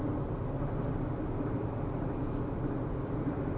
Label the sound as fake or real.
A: real